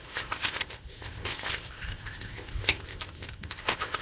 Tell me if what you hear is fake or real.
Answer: fake